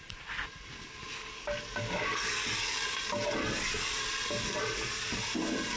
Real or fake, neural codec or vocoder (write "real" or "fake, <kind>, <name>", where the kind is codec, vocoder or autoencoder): real